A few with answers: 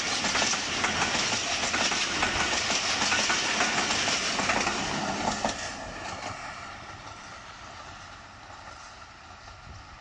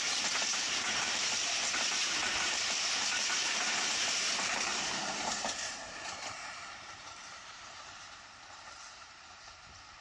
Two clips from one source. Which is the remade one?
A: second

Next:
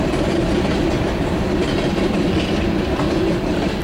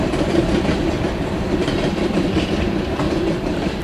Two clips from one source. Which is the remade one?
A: second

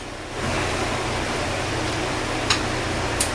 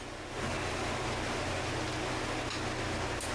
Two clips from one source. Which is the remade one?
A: first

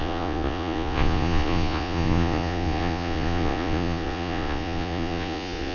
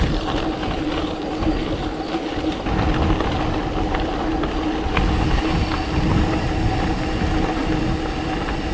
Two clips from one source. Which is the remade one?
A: first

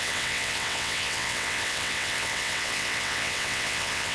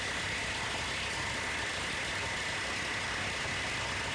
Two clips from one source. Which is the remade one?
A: first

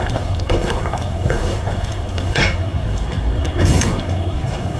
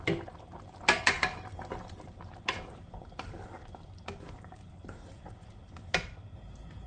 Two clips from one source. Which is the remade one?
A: first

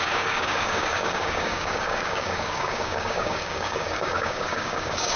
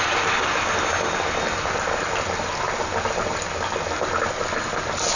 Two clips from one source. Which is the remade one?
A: first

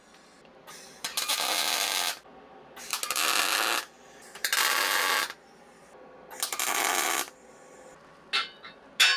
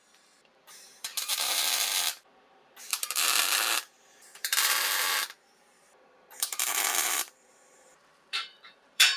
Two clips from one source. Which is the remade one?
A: second